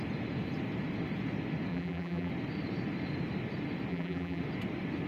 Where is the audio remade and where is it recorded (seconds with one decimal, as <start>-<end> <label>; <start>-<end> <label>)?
0.0-1.7 recorded; 1.7-2.3 remade; 2.3-3.9 recorded; 3.9-4.4 remade; 4.4-5.1 recorded